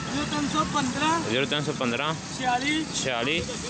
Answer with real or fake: real